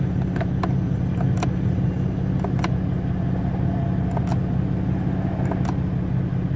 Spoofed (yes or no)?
no